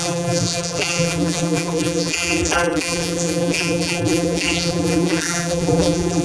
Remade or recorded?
remade